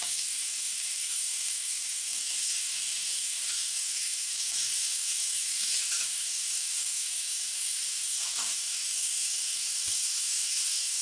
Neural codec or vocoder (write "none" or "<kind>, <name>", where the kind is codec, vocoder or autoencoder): codec, DAC